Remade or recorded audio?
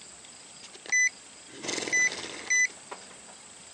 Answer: recorded